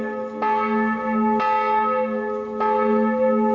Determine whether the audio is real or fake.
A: real